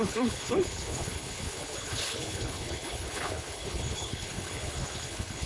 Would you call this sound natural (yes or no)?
no